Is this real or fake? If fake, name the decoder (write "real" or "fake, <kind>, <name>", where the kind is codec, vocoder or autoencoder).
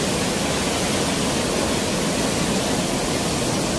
real